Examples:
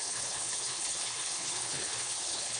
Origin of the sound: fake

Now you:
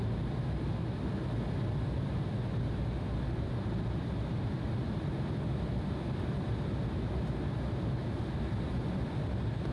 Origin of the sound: real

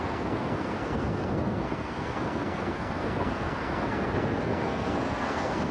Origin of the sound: fake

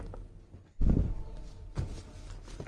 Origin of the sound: fake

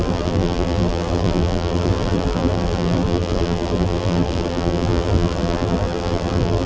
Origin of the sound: fake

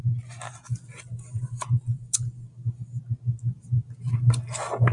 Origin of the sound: real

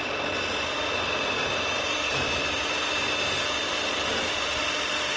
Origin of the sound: real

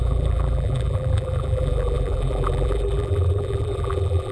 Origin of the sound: fake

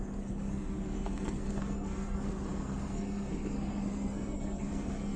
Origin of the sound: fake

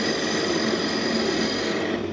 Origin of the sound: real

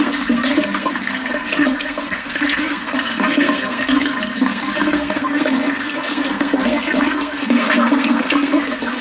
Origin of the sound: fake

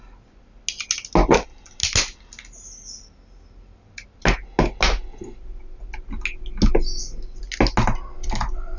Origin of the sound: real